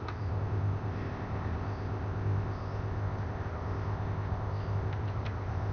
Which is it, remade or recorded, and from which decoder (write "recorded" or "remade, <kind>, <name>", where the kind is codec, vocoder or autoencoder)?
remade, codec, ZipCodec